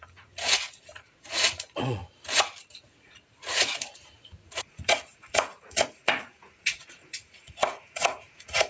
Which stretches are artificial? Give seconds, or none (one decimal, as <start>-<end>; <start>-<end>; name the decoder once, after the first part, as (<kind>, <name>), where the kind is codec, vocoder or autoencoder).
0.0-2.0 (vocoder, Vocos); 2.8-8.7